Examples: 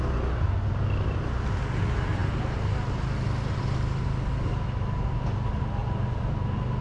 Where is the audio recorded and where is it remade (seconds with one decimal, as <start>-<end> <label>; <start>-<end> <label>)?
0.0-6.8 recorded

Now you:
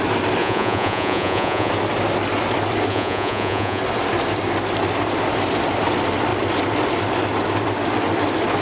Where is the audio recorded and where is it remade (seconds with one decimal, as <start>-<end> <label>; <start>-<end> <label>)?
0.0-0.4 recorded; 0.4-1.7 remade; 1.7-2.9 recorded; 2.9-3.8 remade; 3.8-8.6 recorded

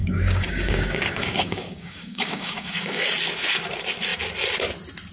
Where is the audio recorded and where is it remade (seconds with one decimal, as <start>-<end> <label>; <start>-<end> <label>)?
0.0-3.1 remade; 3.1-5.1 recorded

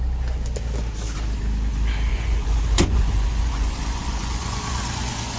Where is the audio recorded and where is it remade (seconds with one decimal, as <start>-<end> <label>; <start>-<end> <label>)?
0.0-2.1 recorded; 2.1-5.4 remade

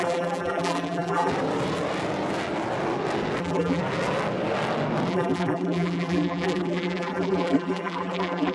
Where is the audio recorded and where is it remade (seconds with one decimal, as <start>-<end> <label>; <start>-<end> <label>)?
0.0-1.3 remade; 1.3-3.4 recorded; 3.4-3.8 remade; 3.8-5.1 recorded; 5.1-8.5 remade

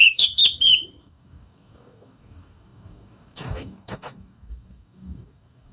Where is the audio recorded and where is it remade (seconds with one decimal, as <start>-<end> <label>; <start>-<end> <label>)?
0.0-0.4 remade; 0.4-1.0 recorded; 1.0-5.7 remade

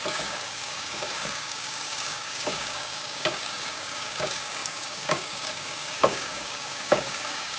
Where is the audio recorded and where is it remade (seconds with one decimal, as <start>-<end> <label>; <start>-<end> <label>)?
0.0-7.6 remade

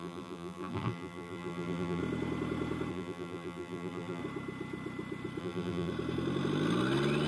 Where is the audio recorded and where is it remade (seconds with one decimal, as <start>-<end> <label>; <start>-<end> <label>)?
0.0-2.0 remade; 2.0-2.9 recorded; 2.9-4.2 remade; 4.2-5.4 recorded; 5.4-5.9 remade; 5.9-7.3 recorded